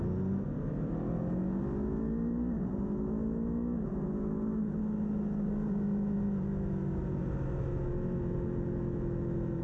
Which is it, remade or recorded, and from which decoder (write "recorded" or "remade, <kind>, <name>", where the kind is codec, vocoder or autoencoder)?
recorded